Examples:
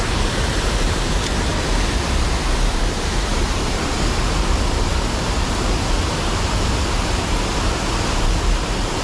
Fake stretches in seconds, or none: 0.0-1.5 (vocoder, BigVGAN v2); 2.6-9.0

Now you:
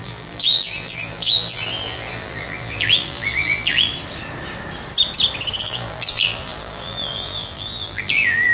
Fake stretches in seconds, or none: 0.0-3.9 (vocoder, BigVGAN v2); 5.6-8.5